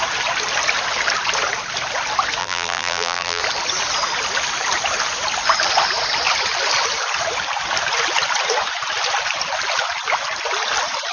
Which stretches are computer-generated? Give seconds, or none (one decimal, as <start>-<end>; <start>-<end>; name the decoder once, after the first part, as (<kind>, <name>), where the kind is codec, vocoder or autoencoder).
2.4-3.4 (vocoder, BigVGAN v2)